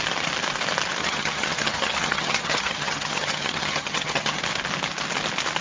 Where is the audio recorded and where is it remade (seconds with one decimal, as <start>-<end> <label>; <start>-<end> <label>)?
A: 0.0-1.0 recorded; 1.0-4.4 remade; 4.4-5.6 recorded